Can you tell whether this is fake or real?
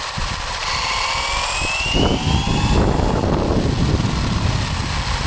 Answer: real